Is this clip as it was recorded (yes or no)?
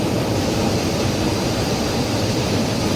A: yes